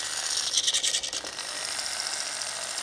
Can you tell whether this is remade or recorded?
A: recorded